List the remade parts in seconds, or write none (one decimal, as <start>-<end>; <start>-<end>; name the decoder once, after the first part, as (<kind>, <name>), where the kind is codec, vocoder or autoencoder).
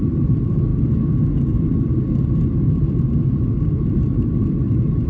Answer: none